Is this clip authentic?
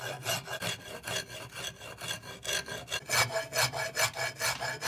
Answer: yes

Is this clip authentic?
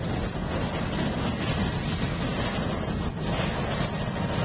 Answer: yes